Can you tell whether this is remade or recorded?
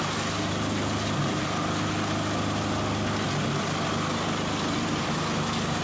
recorded